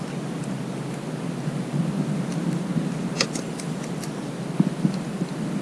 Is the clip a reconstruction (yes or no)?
no